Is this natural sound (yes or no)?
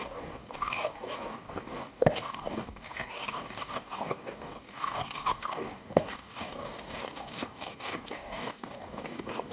no